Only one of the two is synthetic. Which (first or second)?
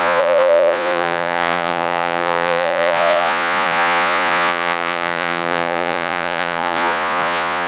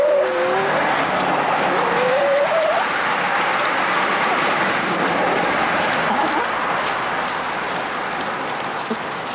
first